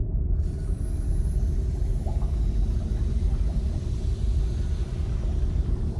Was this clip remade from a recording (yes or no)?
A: no